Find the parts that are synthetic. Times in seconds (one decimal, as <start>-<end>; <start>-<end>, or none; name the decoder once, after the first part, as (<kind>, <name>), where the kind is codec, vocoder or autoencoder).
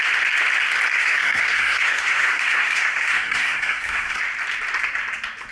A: 0.9-4.2 (codec, SNAC)